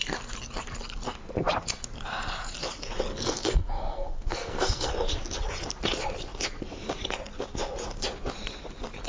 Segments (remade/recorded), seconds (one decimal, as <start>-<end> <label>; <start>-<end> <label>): 0.0-3.1 recorded; 3.1-4.9 remade; 4.9-9.1 recorded